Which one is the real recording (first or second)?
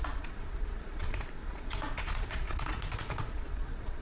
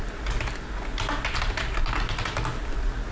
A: second